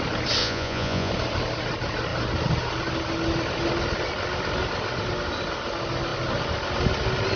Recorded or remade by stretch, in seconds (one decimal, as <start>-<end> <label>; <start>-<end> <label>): 0.0-0.4 recorded; 0.4-1.1 remade; 1.1-7.4 recorded